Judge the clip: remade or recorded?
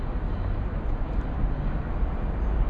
recorded